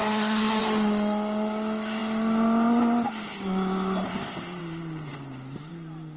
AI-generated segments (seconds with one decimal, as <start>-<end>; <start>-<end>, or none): 0.0-0.6